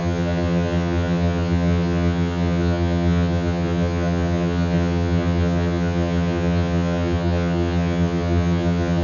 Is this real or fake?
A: fake